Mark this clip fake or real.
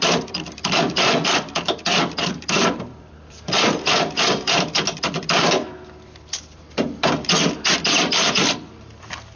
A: fake